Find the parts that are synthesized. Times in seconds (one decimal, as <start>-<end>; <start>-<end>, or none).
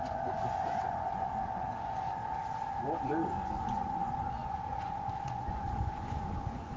0.0-2.2; 3.3-6.8